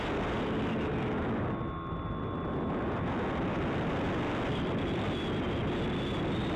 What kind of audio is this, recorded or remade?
recorded